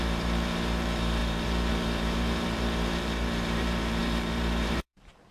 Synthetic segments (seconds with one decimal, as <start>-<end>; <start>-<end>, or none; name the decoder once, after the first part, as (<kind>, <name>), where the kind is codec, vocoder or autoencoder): 0.0-5.3 (vocoder, BigVGAN v2)